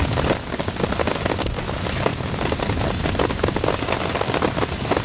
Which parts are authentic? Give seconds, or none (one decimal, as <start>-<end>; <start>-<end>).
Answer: 0.0-5.0